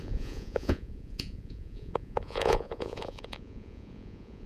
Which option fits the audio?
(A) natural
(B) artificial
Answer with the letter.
B